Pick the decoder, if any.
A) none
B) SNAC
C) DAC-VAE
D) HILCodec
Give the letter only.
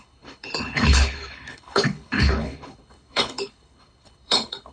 D